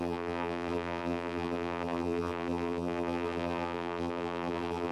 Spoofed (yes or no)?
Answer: yes